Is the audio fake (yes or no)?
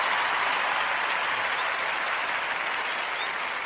no